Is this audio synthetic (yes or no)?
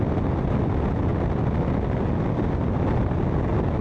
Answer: no